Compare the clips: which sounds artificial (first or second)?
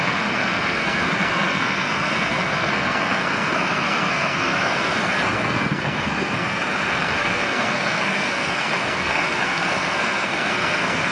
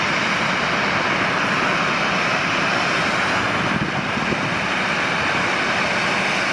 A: first